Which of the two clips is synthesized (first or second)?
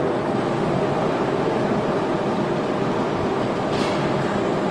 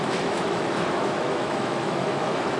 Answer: second